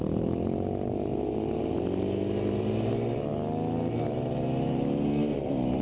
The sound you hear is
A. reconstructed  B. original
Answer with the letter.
B